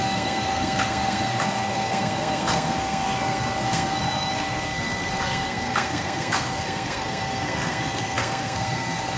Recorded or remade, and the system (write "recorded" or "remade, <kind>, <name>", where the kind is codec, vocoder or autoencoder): remade, codec, SNAC